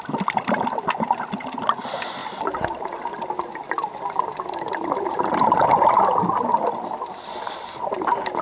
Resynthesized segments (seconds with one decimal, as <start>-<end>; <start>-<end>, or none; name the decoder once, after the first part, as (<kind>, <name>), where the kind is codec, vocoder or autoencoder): none